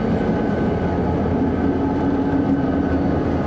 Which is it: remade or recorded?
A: recorded